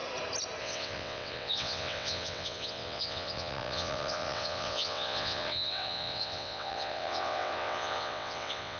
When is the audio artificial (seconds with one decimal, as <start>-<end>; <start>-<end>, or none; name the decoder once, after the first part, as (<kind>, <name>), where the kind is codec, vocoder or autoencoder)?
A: 0.6-8.8 (vocoder, WaveNeXt)